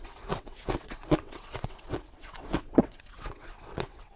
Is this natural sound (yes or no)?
no